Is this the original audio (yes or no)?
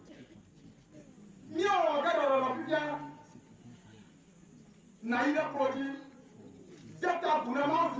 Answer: yes